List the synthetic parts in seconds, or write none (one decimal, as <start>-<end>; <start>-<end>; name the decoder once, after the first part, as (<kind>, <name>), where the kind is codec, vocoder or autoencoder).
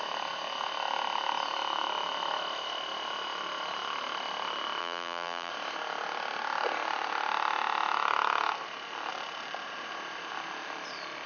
4.8-5.5 (vocoder, BigVGAN v2)